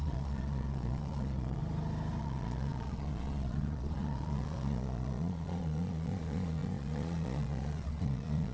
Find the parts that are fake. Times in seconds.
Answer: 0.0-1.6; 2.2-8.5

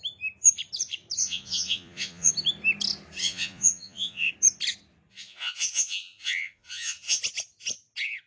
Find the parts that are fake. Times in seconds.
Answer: 1.2-2.3; 3.2-4.3; 5.1-7.2

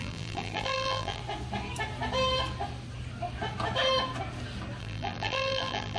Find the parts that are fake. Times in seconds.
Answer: 0.0-1.2; 4.8-6.0

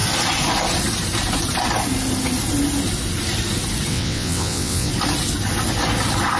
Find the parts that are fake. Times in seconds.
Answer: 3.9-4.9

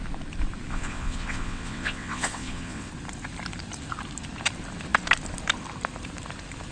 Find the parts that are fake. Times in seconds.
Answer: 0.7-2.9